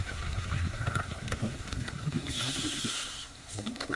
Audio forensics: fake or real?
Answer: fake